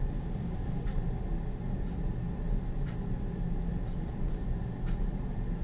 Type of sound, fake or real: real